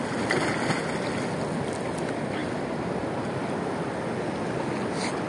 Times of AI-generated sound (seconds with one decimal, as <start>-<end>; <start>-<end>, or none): none